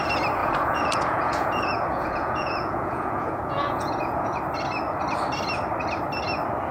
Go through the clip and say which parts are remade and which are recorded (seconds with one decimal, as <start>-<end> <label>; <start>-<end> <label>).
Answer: 0.0-0.4 recorded; 0.4-4.4 remade; 4.4-6.7 recorded